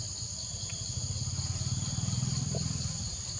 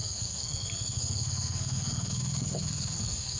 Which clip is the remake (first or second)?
second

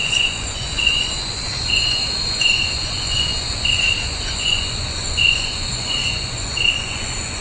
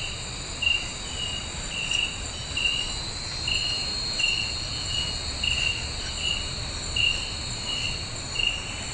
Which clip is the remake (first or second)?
first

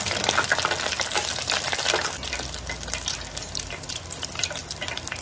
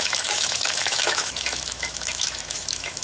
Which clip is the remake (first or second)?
second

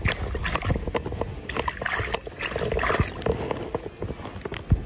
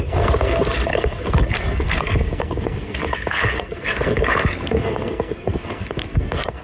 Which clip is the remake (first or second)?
second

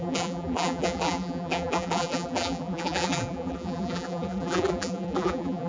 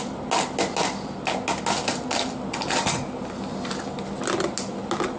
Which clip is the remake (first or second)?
first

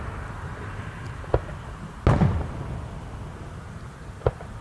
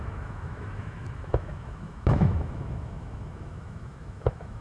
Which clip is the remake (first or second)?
second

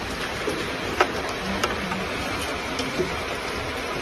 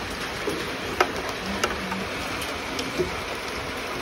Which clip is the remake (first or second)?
first